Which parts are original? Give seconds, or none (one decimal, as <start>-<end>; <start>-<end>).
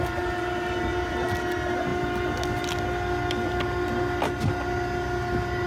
0.0-5.7